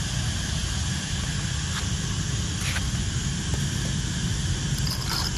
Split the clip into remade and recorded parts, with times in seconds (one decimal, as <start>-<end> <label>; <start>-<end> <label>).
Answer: 0.0-5.4 recorded